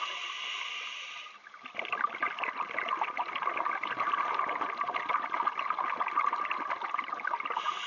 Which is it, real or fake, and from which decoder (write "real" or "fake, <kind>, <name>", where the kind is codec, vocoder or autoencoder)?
real